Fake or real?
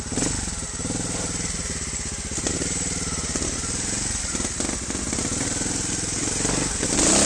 real